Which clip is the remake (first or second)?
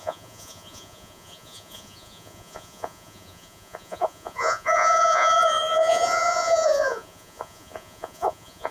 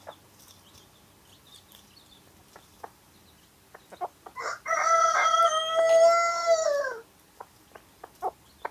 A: first